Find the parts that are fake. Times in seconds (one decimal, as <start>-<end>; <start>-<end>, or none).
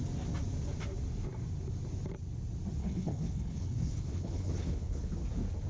2.8-5.1